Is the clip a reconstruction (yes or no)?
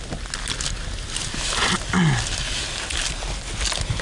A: no